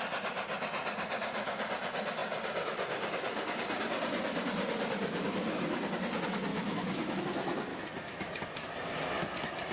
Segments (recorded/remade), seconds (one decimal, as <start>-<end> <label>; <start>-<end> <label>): 0.0-6.5 recorded; 6.5-7.2 remade; 7.2-7.7 recorded; 7.7-8.7 remade; 8.7-9.7 recorded